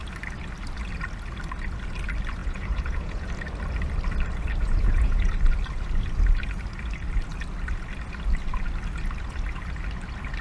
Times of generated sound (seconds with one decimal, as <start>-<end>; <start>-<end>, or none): 2.4-3.3; 4.6-5.3

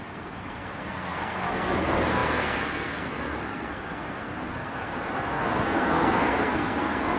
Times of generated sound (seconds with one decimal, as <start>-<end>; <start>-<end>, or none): 0.0-7.2

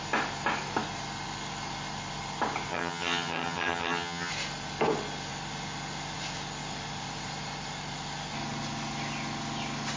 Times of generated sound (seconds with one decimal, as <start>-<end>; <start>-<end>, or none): 2.7-4.3

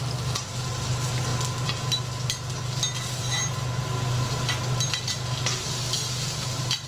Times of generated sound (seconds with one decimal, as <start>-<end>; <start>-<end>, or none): none

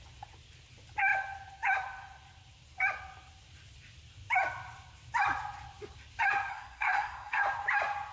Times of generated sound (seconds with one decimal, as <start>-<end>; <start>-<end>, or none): 6.5-7.4

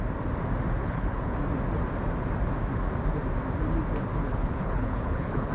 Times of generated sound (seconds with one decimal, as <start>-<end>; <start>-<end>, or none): 0.8-1.4; 4.2-5.5

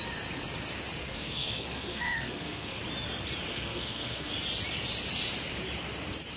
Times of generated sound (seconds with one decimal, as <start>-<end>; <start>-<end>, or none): 1.0-2.8; 3.5-4.3

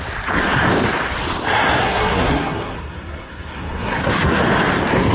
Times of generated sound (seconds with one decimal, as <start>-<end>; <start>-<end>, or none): 1.8-4.4